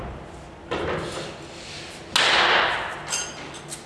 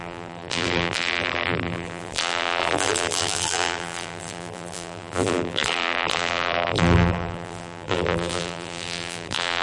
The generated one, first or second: second